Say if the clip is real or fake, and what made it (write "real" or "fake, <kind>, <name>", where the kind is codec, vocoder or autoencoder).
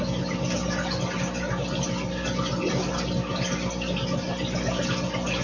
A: real